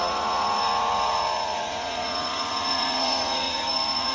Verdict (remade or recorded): remade